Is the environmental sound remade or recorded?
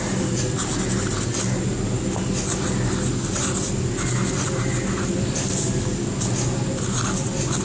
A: recorded